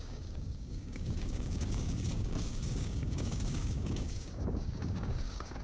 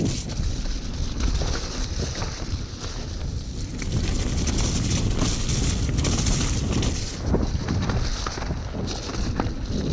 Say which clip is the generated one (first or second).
first